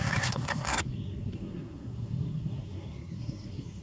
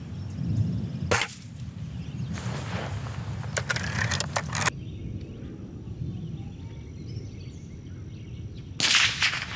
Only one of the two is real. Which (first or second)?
second